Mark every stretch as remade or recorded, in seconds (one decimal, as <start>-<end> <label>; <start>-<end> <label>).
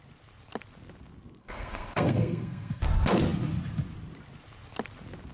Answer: 0.0-1.4 recorded; 1.4-2.8 remade; 2.8-5.3 recorded